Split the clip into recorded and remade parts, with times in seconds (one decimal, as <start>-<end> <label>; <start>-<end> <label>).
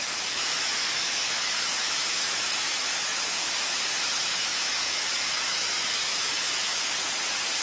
0.0-7.0 remade; 7.0-7.6 recorded